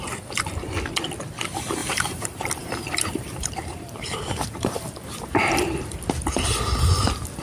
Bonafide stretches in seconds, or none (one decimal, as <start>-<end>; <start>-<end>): 0.0-1.8; 6.0-7.4